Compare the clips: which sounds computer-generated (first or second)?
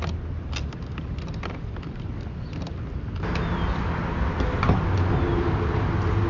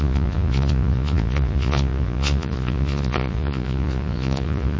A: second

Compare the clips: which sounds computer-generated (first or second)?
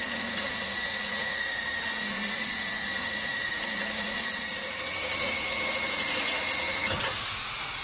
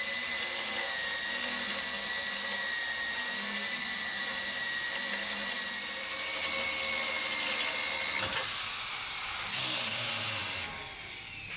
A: first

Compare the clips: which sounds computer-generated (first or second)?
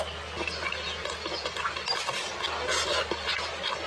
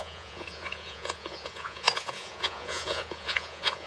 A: second